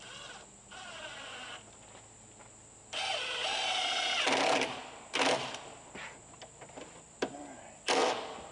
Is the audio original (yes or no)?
yes